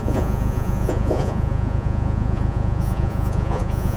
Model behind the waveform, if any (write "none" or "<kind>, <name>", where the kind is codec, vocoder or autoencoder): vocoder, Vocos